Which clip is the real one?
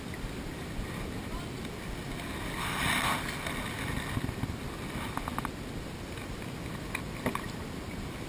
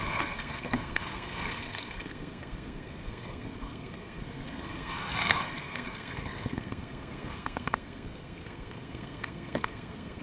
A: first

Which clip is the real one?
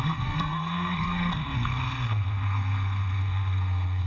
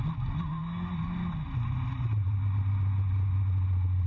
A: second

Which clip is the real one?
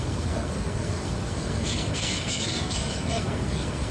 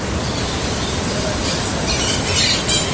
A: second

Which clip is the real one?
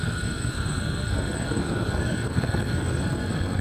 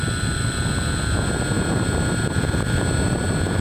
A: second